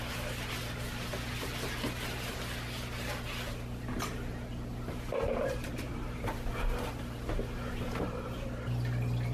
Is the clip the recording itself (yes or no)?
yes